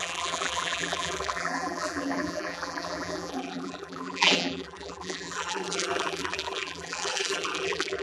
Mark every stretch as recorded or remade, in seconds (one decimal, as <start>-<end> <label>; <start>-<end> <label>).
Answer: 0.0-8.0 remade